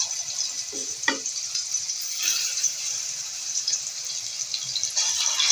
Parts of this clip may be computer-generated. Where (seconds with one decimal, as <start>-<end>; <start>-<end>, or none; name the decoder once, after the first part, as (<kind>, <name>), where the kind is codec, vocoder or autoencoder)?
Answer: 0.8-4.1 (vocoder, BigVGAN v2)